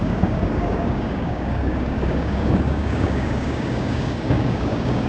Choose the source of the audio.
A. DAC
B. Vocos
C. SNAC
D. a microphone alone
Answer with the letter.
A